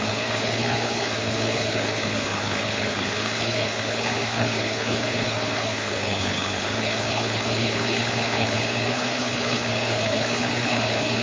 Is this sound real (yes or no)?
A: no